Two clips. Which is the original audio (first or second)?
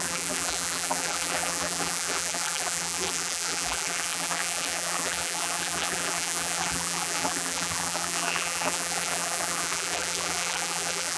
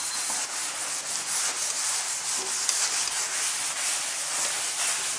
second